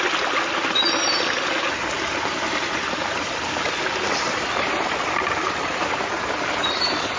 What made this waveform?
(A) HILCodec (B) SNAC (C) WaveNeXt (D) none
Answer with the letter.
D